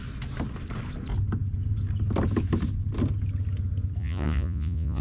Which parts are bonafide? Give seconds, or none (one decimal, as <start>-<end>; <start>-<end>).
0.0-4.0